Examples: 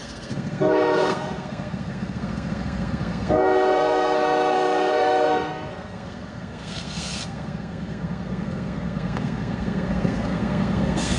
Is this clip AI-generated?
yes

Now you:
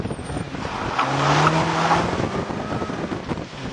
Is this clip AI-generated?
no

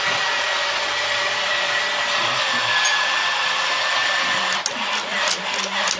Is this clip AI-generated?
no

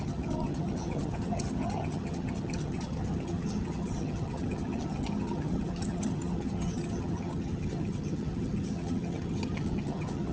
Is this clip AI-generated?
yes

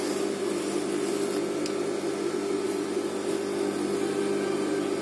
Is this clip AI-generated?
no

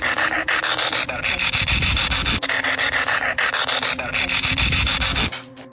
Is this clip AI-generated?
no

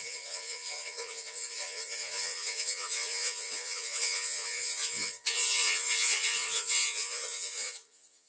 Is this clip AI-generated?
yes